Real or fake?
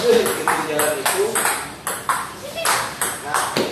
real